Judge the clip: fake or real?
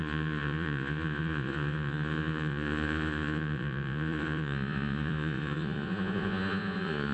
fake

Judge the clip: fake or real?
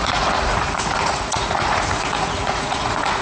fake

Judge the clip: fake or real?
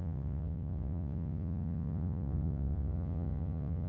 fake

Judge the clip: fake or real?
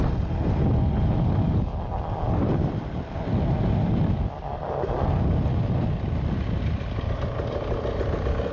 real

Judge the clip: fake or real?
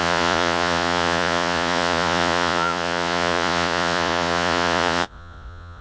fake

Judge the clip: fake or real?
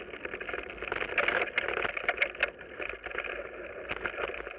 real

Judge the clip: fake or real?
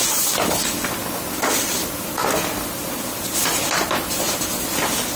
real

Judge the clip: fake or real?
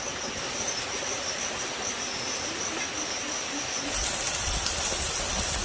real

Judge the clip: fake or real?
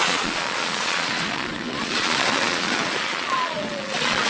fake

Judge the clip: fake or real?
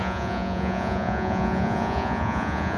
fake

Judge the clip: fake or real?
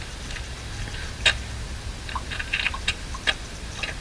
real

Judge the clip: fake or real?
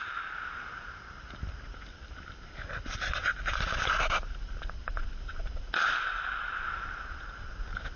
real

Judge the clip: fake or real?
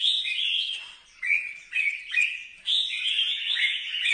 fake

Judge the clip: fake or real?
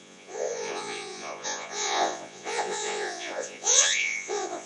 fake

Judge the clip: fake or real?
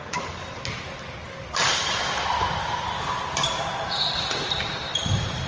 real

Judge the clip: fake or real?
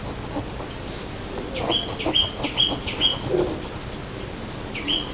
real